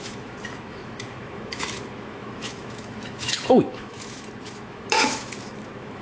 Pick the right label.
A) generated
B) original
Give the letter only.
A